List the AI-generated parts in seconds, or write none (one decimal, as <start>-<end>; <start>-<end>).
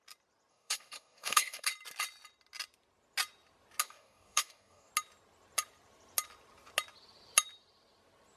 0.5-1.7; 3.8-4.9